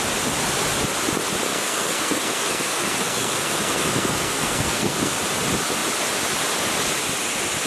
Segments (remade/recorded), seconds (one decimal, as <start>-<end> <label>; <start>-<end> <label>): 0.0-1.5 recorded; 1.5-5.2 remade; 5.2-7.7 recorded